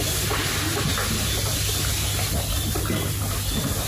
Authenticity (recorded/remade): recorded